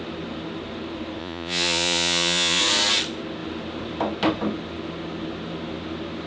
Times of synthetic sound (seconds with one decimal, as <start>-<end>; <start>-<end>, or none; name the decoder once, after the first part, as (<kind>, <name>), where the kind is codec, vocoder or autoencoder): 1.2-2.6 (vocoder, Vocos)